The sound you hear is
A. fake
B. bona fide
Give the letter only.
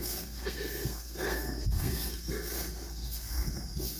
A